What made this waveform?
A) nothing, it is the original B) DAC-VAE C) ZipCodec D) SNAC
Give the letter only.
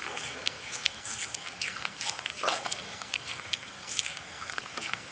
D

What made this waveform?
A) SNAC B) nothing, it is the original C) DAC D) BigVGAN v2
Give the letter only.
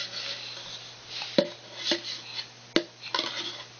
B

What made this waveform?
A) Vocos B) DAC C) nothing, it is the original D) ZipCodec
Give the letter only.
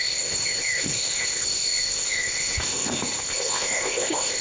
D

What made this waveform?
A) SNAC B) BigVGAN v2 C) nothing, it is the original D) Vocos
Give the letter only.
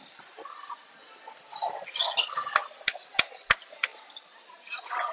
C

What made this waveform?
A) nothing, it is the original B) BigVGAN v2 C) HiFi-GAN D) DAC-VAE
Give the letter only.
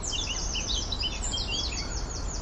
A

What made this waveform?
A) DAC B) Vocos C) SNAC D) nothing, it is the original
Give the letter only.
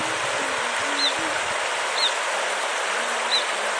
D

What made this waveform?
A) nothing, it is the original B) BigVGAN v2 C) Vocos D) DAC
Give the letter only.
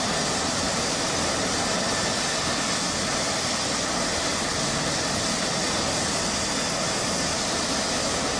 A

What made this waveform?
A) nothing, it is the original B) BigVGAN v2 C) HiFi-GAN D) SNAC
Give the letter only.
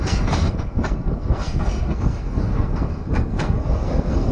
D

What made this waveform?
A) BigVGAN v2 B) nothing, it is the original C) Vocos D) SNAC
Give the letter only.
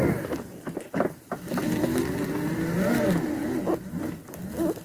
B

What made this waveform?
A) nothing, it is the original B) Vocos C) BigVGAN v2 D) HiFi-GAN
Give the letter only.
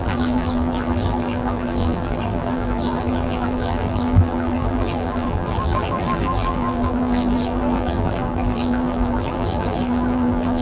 C